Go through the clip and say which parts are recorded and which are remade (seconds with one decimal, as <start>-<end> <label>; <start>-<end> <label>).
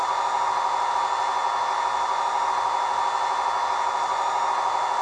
0.0-5.0 recorded